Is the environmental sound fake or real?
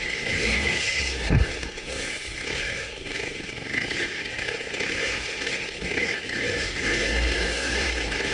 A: fake